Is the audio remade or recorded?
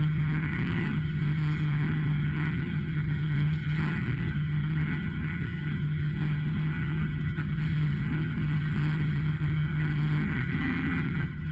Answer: remade